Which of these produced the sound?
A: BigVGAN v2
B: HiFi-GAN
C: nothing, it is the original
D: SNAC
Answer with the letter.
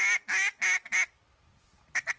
C